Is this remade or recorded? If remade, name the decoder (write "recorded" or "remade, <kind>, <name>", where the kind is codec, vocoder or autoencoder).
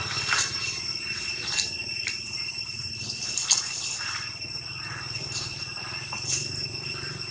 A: remade, vocoder, BigVGAN v2